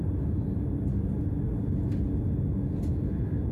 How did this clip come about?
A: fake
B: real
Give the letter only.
B